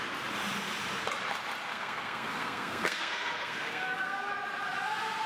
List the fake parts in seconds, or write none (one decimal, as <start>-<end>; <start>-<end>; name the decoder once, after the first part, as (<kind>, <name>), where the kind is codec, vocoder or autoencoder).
1.7-4.3 (codec, SNAC)